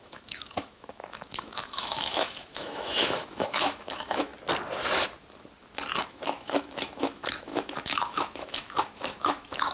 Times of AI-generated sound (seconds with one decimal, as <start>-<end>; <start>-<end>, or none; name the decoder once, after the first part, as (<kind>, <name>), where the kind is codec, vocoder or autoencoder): 0.0-4.3 (autoencoder, DAC-VAE); 6.0-9.7